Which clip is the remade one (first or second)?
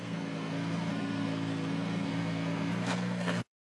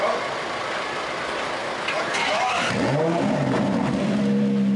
first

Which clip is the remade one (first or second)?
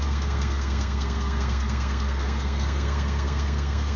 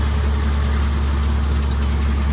first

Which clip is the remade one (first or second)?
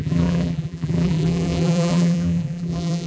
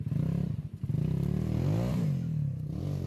first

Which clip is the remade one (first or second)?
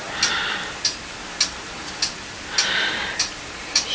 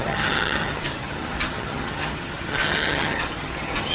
second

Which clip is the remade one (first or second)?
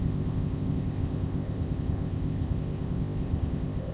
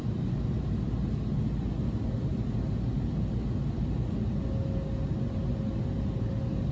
first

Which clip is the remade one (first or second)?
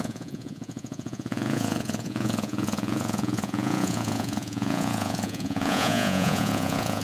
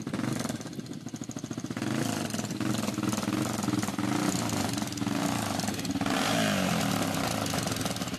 first